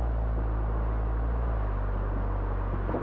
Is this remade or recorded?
recorded